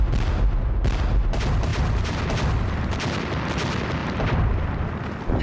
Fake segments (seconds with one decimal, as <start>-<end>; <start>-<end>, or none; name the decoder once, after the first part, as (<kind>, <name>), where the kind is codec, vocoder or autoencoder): 1.7-2.2 (vocoder, BigVGAN v2); 4.0-5.4